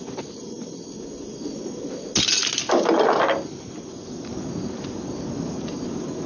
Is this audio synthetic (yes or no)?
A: no